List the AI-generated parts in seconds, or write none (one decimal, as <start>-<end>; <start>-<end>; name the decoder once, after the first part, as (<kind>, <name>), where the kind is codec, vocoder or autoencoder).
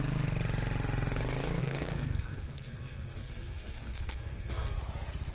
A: 1.6-4.8 (codec, SNAC)